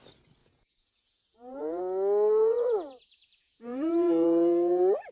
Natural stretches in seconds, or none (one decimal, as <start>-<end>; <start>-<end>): 0.0-0.4; 1.8-2.4